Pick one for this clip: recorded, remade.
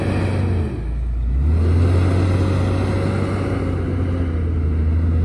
recorded